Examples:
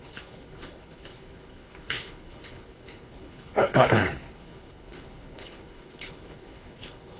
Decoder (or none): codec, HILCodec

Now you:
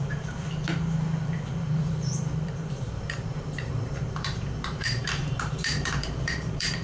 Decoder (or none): vocoder, BigVGAN v2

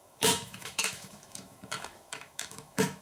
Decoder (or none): autoencoder, DAC-VAE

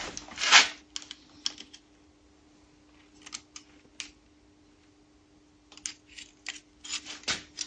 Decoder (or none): none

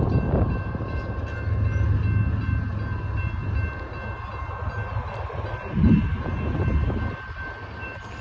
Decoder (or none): none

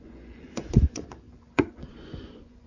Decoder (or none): vocoder, Vocos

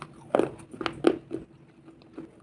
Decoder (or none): none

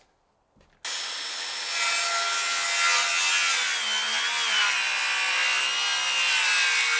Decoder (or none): none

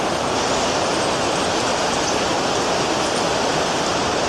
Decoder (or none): none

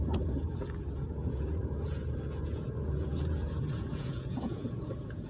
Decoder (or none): vocoder, Vocos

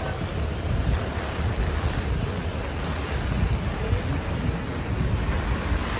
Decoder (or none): none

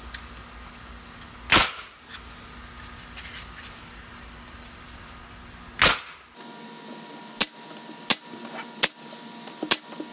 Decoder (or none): none